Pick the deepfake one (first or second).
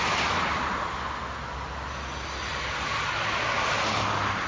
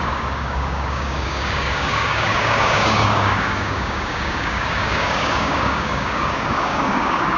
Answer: second